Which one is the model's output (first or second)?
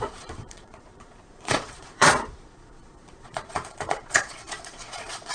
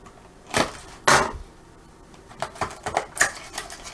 first